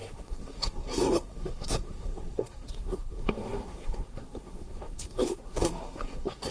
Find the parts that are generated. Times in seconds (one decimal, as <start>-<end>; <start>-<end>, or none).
0.0-6.5